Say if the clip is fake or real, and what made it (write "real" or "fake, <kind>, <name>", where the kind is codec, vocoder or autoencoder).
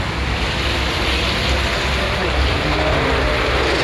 real